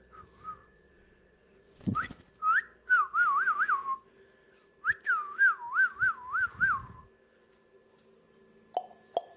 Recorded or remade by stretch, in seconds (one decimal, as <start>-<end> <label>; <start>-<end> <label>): 0.0-0.6 recorded; 0.6-2.3 remade; 2.3-9.4 recorded